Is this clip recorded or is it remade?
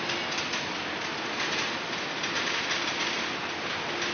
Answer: recorded